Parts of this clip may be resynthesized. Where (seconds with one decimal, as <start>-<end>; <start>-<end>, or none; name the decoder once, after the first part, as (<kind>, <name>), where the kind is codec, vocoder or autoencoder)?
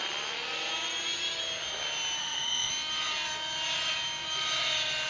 2.2-2.7 (autoencoder, DAC-VAE)